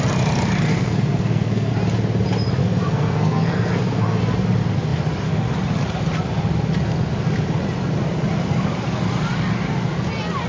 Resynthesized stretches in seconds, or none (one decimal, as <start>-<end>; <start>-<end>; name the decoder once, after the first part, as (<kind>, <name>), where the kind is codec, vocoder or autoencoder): 0.7-1.7 (codec, SNAC); 2.6-4.2